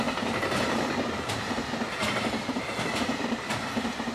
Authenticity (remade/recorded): recorded